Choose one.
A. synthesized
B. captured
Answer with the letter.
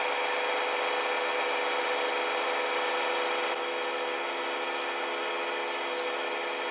B